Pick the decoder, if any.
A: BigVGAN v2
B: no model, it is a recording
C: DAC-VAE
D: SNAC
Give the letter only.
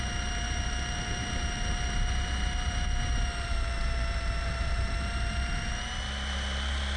A